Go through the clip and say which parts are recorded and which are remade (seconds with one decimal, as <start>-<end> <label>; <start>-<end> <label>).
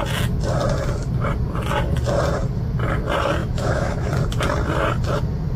0.0-3.4 recorded; 3.4-4.1 remade; 4.1-5.6 recorded